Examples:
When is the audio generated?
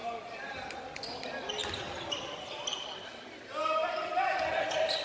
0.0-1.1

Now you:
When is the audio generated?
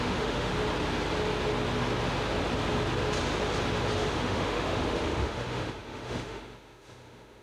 0.0-0.5; 4.1-7.4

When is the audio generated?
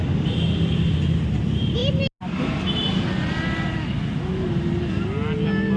none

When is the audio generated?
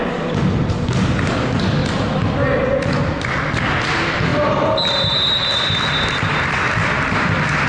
1.8-2.7; 4.3-7.1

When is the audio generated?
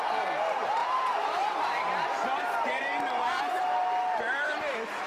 0.8-3.6